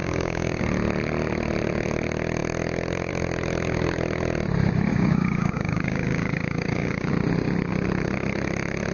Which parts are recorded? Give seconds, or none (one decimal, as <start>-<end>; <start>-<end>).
0.6-4.9; 7.1-8.9